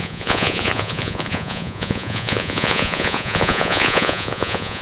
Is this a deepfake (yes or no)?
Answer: yes